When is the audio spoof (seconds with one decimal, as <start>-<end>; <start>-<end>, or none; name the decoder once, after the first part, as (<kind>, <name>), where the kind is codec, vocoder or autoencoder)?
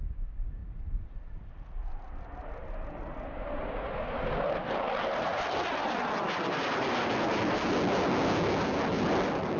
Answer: 5.3-6.0 (vocoder, BigVGAN v2)